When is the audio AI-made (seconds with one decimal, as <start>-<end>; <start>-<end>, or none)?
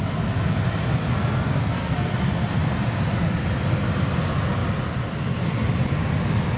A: 1.1-2.1